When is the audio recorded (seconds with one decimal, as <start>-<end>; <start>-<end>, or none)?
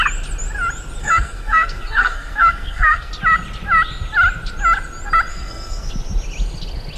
0.0-1.0; 3.1-5.3; 5.9-7.0